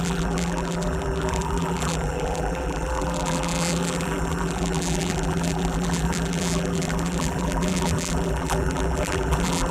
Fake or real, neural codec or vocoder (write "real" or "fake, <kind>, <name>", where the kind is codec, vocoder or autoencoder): fake, vocoder, BigVGAN v2